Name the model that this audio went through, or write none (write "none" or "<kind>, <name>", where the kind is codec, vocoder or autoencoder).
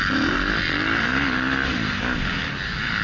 none